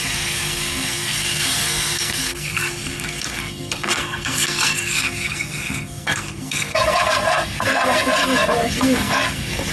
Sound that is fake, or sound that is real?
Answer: fake